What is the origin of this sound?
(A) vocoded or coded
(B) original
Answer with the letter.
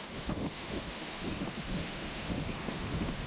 A